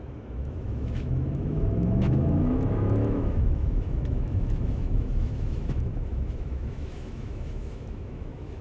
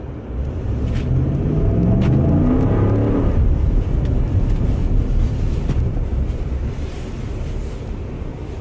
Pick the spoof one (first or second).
first